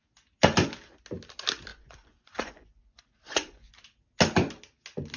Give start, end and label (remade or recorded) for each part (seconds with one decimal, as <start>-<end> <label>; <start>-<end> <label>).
0.0-1.7 recorded; 1.7-3.7 remade; 3.7-5.2 recorded

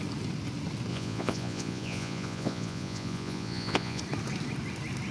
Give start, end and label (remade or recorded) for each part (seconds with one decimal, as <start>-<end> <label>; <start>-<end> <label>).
0.0-0.9 recorded; 0.9-4.0 remade; 4.0-5.1 recorded

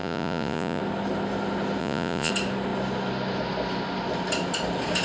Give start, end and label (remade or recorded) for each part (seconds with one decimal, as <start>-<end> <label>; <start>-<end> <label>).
0.0-0.8 remade; 0.8-1.8 recorded; 1.8-2.3 remade; 2.3-5.0 recorded

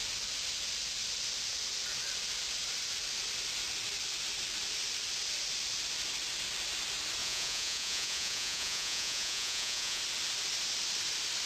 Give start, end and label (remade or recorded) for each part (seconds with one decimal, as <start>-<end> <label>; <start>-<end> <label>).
0.0-7.2 recorded; 7.2-10.0 remade; 10.0-11.5 recorded

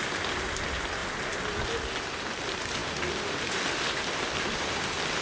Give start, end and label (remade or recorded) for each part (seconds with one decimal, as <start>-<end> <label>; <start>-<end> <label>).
0.0-5.2 recorded

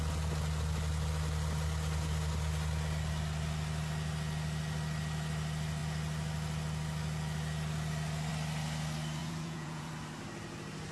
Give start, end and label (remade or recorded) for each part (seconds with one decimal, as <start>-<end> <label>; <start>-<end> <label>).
0.0-9.2 recorded; 9.2-9.9 remade; 9.9-10.9 recorded

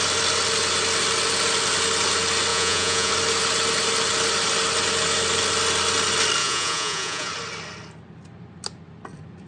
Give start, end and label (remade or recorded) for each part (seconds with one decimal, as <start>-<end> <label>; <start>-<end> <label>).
0.0-2.5 recorded; 2.5-3.1 remade; 3.1-6.4 recorded; 6.4-7.3 remade; 7.3-9.5 recorded

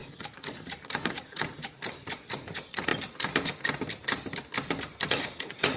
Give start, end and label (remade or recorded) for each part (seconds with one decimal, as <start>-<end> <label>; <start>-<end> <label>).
0.0-2.9 remade; 2.9-5.1 recorded; 5.1-5.8 remade